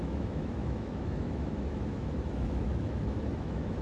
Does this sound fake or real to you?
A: fake